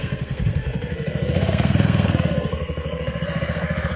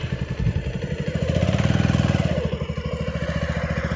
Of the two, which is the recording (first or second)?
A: second